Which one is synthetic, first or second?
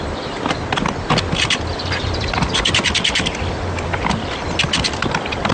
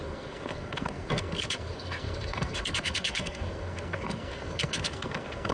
second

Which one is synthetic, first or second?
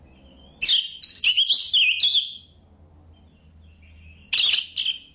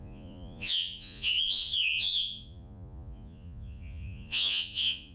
second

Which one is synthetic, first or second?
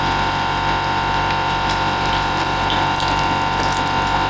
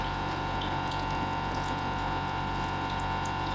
second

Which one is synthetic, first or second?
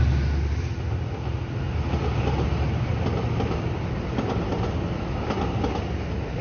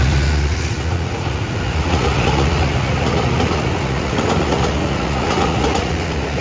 second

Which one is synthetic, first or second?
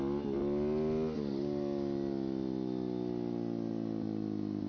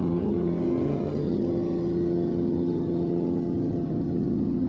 second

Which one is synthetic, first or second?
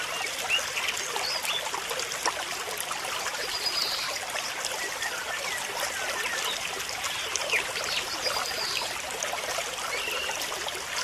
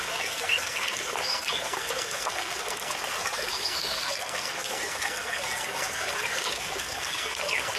second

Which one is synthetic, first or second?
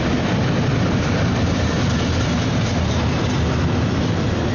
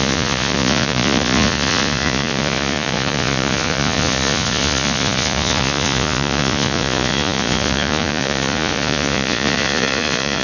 second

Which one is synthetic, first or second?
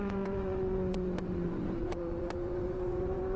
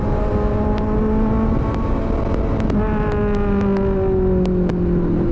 first